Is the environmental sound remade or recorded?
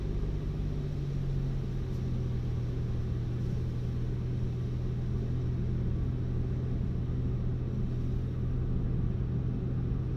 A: recorded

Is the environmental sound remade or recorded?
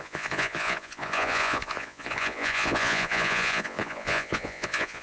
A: remade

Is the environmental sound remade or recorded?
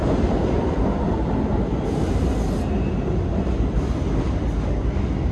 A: recorded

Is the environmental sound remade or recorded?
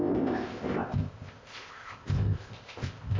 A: remade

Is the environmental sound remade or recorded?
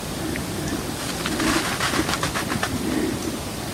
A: recorded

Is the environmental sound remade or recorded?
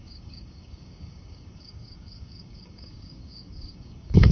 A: remade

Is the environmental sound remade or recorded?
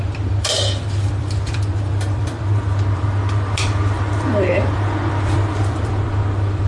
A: remade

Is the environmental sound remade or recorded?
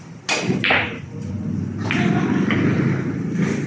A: recorded